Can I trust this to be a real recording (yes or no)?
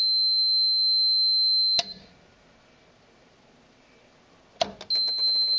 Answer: yes